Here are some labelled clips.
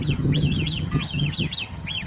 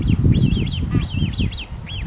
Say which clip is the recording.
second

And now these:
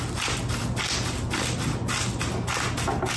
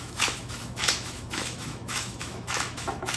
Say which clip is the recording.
first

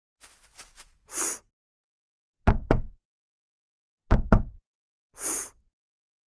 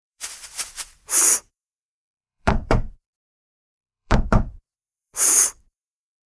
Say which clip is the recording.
first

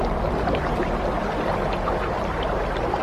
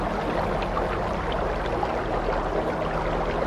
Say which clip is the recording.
second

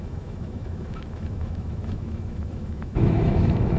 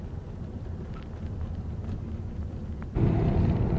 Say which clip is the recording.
second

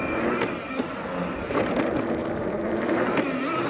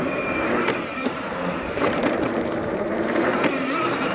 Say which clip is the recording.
first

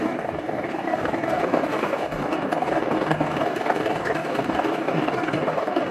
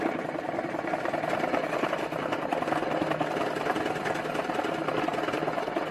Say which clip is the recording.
second